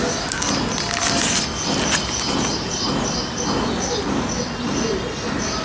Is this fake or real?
real